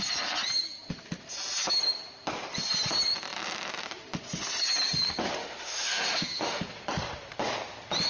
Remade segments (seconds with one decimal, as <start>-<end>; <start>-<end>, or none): 5.4-6.6